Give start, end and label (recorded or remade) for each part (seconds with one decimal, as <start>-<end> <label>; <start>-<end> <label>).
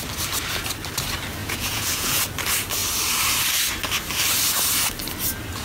0.0-1.4 recorded; 1.4-2.3 remade; 2.3-5.6 recorded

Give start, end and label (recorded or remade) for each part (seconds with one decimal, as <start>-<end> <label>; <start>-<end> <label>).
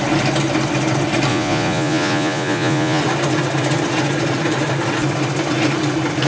0.0-1.3 recorded; 1.3-3.0 remade; 3.0-6.3 recorded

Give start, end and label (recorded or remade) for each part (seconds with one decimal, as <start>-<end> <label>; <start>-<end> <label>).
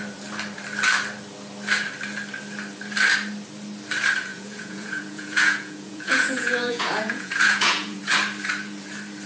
0.0-4.3 recorded; 4.3-8.0 remade; 8.0-9.3 recorded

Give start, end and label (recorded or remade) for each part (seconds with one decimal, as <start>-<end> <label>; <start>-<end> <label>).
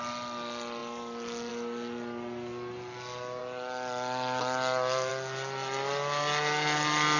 0.0-7.2 recorded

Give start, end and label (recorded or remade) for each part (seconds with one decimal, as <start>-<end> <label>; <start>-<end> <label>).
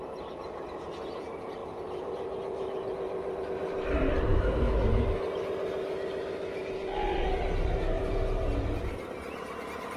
0.0-4.3 recorded; 4.3-5.2 remade; 5.2-10.0 recorded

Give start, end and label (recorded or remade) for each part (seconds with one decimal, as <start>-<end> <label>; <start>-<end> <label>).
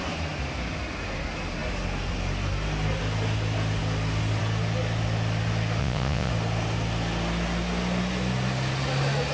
0.0-5.8 recorded; 5.8-6.3 remade; 6.3-9.3 recorded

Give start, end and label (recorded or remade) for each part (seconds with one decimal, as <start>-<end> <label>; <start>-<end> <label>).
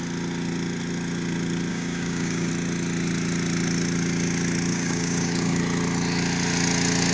0.0-1.7 recorded; 1.7-2.5 remade; 2.5-4.7 recorded; 4.7-5.6 remade; 5.6-7.1 recorded